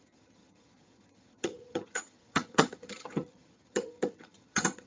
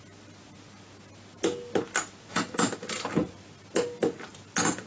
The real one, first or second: second